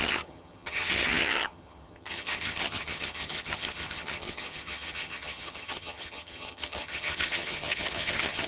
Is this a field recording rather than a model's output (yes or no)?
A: no